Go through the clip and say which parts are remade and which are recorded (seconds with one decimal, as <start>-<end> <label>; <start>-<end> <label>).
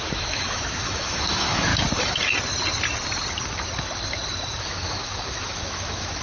0.0-1.7 remade; 1.7-4.6 recorded; 4.6-6.2 remade